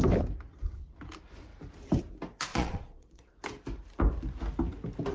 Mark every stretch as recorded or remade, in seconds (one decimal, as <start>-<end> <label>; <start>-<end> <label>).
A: 0.0-2.5 recorded; 2.5-3.3 remade; 3.3-5.1 recorded